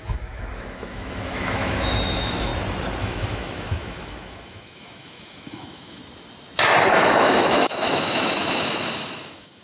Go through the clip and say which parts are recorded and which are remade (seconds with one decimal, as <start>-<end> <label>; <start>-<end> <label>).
0.0-2.5 remade; 2.5-3.0 recorded; 3.0-6.0 remade; 6.0-6.9 recorded; 6.9-9.6 remade